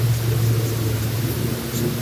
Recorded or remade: recorded